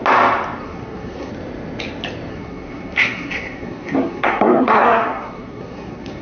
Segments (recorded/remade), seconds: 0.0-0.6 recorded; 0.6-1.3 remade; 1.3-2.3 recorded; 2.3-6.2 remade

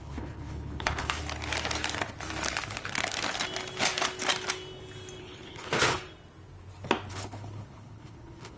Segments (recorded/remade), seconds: 0.0-1.2 remade; 1.2-5.2 recorded; 5.2-6.0 remade; 6.0-7.1 recorded; 7.1-8.6 remade